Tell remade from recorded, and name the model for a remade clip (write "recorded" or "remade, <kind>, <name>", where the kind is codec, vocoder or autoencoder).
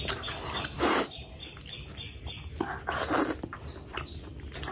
recorded